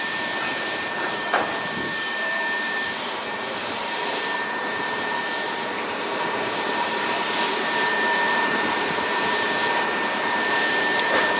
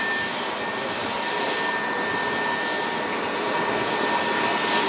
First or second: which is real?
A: second